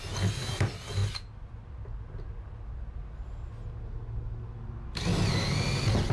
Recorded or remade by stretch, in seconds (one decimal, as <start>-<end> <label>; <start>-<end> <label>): 0.0-6.1 recorded